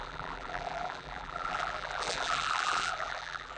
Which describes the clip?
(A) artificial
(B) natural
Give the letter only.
A